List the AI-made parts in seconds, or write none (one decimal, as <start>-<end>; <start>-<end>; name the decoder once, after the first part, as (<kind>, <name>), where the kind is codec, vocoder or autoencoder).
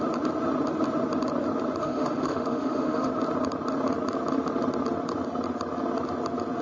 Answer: 1.8-3.1 (autoencoder, DAC-VAE)